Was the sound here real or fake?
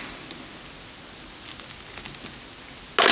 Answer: real